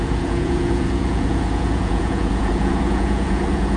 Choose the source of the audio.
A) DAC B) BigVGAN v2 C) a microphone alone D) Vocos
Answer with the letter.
D